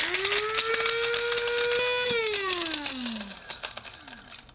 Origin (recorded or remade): recorded